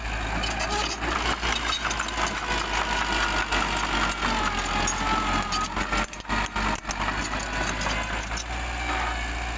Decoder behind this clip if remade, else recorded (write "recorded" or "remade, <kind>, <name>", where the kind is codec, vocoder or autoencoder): recorded